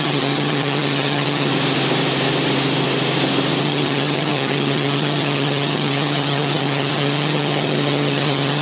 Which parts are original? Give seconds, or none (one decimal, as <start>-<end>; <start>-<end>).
1.5-3.6